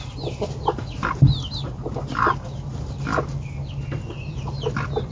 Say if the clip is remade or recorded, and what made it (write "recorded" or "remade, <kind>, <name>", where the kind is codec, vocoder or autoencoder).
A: recorded